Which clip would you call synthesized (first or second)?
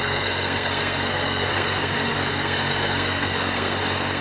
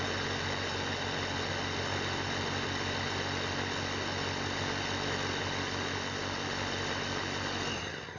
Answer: first